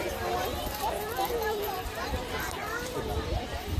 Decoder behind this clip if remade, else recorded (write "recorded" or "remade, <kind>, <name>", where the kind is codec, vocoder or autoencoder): remade, vocoder, BigVGAN v2